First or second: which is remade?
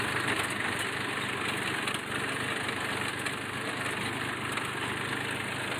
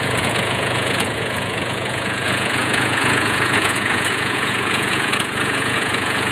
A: second